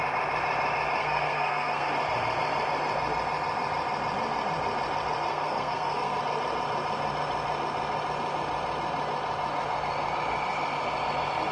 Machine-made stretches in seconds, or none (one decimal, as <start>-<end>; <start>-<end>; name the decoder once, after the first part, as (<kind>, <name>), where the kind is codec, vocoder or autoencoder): 1.0-1.9 (codec, SNAC); 5.3-6.2